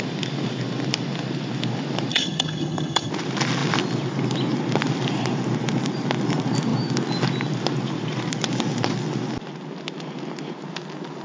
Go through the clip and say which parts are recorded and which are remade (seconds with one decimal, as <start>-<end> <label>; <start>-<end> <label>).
0.0-2.1 recorded; 2.1-3.1 remade; 3.1-11.2 recorded